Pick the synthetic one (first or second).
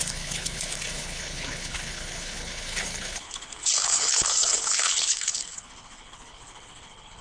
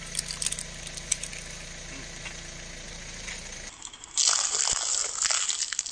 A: first